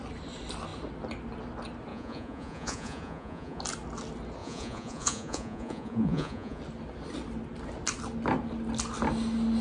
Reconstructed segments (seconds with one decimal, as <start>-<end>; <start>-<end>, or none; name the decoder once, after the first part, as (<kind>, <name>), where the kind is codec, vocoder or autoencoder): 1.9-3.6 (vocoder, Vocos); 4.4-6.6